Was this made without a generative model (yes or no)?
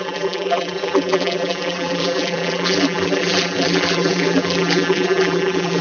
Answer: no